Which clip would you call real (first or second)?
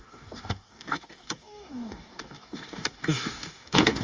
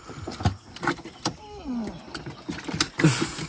second